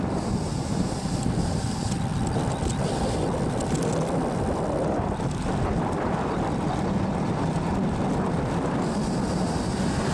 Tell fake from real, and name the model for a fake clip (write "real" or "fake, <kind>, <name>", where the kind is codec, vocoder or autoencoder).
real